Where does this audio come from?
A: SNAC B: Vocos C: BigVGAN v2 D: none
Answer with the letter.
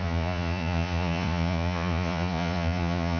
B